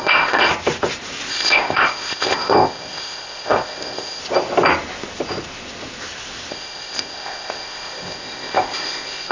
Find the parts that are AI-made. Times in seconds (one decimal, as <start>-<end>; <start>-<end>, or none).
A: 0.0-0.5; 1.3-4.2; 6.5-9.3